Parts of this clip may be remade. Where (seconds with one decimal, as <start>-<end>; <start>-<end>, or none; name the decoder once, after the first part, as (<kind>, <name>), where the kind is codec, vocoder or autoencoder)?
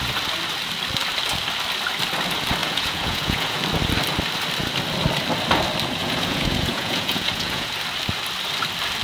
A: 2.6-3.6 (vocoder, Vocos); 6.0-7.7